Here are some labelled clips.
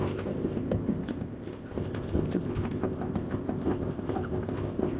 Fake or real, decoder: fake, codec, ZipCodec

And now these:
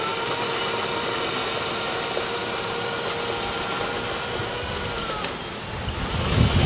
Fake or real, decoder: real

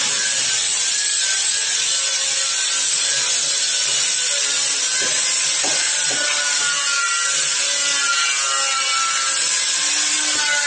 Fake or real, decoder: real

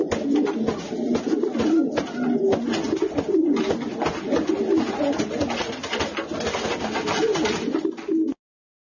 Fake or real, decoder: real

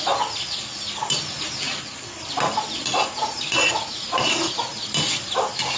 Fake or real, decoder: real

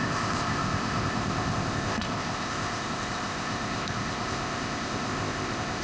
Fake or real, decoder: fake, codec, ZipCodec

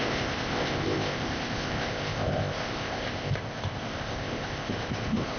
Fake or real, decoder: fake, codec, ZipCodec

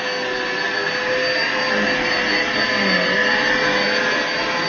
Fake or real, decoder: real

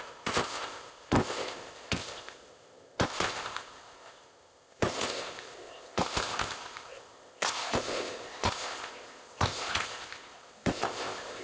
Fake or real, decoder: fake, codec, ZipCodec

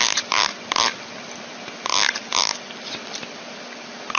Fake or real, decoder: real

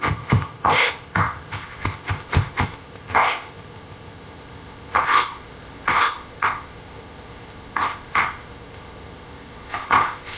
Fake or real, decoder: fake, codec, ZipCodec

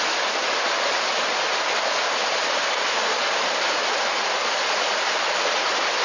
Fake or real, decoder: real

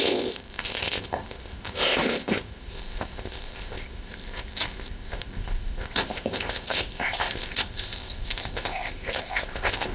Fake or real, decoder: fake, codec, ZipCodec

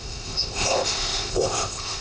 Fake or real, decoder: fake, codec, ZipCodec